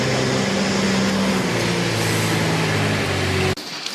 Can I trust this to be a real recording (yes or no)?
yes